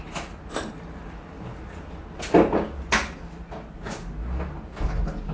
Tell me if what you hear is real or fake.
real